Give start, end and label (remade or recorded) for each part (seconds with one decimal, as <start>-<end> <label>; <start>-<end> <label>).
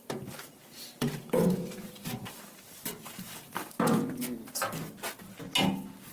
0.0-3.7 remade; 3.7-6.1 recorded